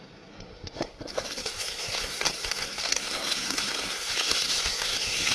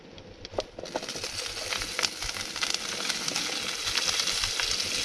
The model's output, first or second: first